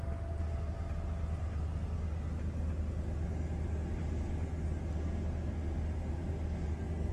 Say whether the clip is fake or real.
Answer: real